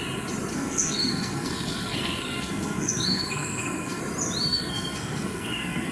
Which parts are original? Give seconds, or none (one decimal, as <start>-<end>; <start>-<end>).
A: 0.0-0.5; 4.0-4.5